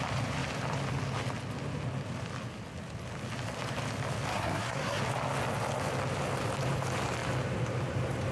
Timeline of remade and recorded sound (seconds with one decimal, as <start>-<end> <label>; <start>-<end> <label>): 0.0-4.3 recorded; 4.3-5.0 remade; 5.0-8.3 recorded